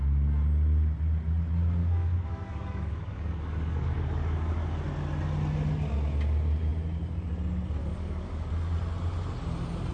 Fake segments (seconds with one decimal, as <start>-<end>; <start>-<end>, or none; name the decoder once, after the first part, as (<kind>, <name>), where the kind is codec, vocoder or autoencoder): 1.8-4.8 (codec, DAC); 7.8-8.5